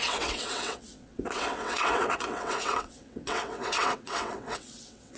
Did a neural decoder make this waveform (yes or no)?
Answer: yes